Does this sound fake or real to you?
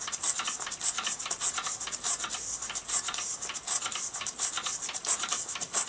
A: real